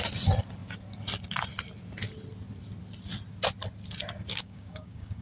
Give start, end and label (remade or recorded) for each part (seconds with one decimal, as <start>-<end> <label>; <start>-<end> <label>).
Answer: 0.0-4.3 recorded; 4.3-5.2 remade